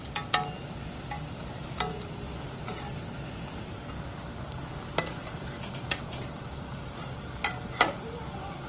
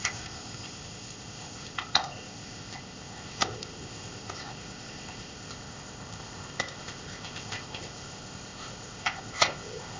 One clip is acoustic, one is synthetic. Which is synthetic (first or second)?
second